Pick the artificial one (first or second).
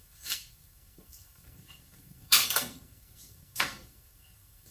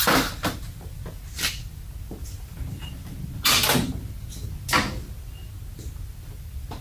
first